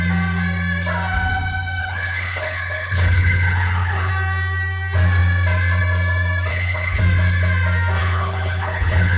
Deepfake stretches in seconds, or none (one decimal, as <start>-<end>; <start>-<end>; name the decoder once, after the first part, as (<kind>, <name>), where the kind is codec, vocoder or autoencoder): 1.8-4.1 (codec, HILCodec); 6.5-7.0; 8.0-9.2